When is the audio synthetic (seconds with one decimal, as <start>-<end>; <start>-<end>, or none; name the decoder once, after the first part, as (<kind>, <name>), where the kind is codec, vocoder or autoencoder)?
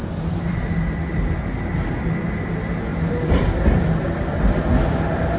0.0-0.6 (vocoder, BigVGAN v2); 2.9-4.6